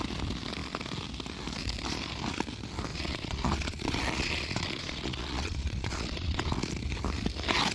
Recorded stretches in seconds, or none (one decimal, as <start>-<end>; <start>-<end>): 0.0-2.9; 6.7-7.7